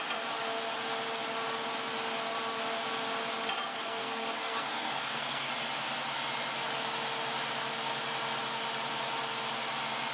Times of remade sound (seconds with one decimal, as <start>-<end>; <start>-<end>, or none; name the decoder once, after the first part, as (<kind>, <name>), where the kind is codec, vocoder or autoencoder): 3.7-5.5 (codec, SNAC)